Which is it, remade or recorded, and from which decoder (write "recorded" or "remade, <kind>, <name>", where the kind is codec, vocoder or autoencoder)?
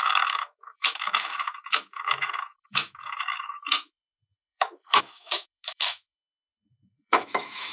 remade, autoencoder, DAC-VAE